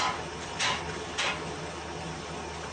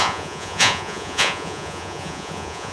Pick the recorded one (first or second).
first